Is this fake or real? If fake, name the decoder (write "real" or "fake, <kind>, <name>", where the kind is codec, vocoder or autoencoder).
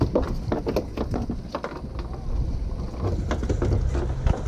real